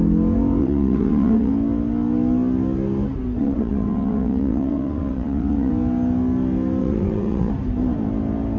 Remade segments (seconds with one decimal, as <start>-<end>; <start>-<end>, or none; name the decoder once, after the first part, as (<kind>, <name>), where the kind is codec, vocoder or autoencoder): 0.6-1.5 (vocoder, WaveNeXt); 3.4-5.7; 6.8-7.5